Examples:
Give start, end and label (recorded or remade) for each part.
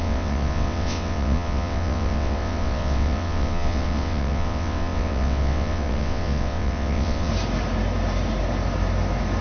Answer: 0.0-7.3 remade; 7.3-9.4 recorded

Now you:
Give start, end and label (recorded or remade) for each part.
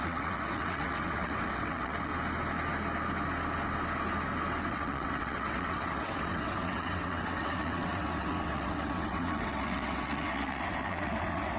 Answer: 0.0-2.1 remade; 2.1-4.7 recorded; 4.7-11.6 remade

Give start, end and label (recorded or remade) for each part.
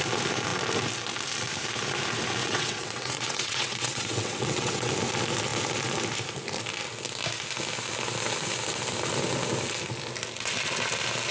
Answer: 0.0-2.4 recorded; 2.4-4.9 remade; 4.9-11.3 recorded